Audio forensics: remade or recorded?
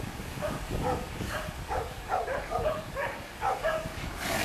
remade